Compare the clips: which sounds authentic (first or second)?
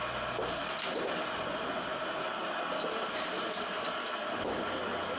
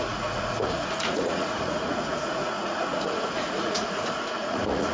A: first